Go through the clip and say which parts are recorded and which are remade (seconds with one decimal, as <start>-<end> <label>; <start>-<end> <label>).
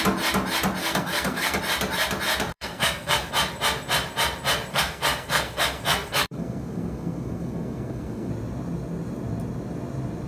0.0-0.8 recorded; 0.8-1.6 remade; 1.6-2.5 recorded; 2.5-3.3 remade; 3.3-4.7 recorded; 4.7-8.3 remade; 8.3-10.3 recorded